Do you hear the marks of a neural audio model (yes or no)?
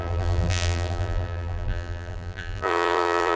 yes